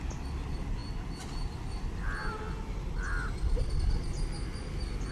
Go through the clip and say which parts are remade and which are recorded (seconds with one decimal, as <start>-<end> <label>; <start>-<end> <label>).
0.0-5.1 recorded